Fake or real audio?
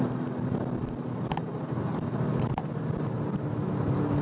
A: real